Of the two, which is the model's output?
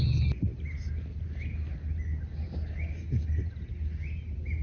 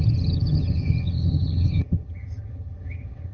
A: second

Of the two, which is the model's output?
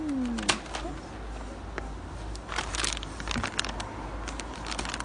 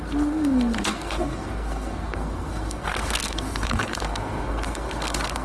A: second